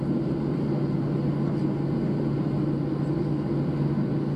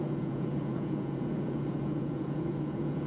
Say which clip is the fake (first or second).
second